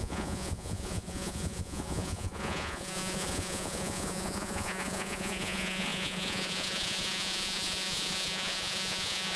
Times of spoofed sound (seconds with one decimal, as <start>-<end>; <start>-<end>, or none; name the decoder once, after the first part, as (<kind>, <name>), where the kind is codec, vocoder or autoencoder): 0.0-9.4 (vocoder, Vocos)